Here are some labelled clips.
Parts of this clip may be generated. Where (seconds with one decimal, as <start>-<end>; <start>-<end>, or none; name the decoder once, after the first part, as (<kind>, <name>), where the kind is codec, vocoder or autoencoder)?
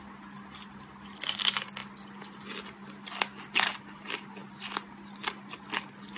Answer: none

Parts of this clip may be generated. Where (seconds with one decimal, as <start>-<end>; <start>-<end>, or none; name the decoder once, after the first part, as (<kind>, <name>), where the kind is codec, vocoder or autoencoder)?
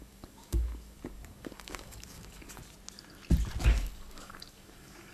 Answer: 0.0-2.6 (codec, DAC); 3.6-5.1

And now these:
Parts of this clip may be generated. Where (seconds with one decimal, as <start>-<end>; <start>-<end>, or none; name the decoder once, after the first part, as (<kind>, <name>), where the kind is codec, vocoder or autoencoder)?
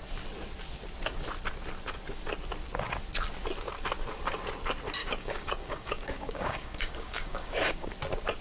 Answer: 5.0-7.9 (codec, DAC)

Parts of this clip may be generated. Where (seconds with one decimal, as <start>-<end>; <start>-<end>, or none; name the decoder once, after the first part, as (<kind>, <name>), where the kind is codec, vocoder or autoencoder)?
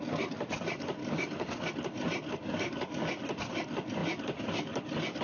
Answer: 1.0-1.7 (codec, DAC); 2.4-3.1